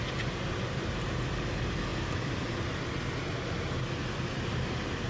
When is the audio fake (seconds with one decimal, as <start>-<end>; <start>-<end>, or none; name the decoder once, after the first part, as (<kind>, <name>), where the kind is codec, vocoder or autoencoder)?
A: none